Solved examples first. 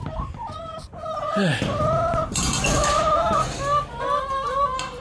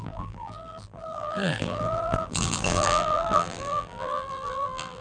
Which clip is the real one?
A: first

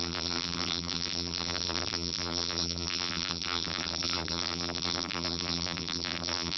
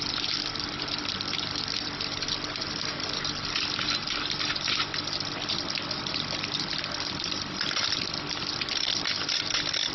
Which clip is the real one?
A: second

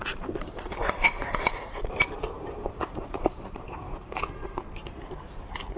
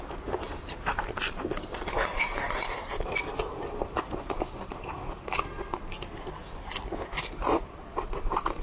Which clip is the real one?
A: second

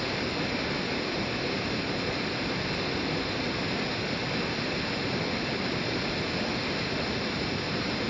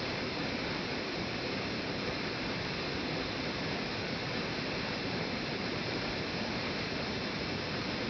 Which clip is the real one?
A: first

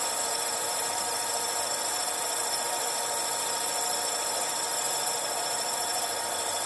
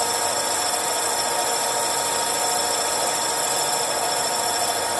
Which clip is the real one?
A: second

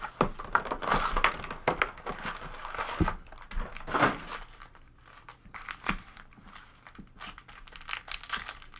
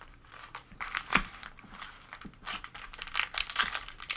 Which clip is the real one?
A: first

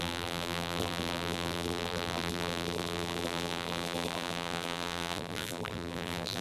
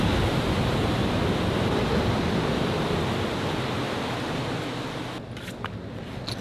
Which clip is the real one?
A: second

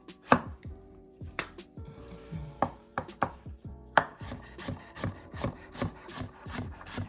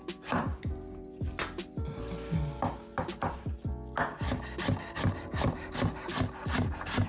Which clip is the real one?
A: second